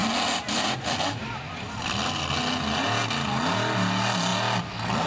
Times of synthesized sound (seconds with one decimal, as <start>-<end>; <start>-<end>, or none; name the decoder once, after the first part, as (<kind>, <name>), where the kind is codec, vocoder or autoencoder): none